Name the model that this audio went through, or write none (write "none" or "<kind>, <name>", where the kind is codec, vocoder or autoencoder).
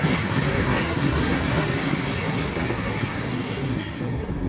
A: codec, SNAC